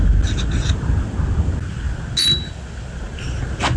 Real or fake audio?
real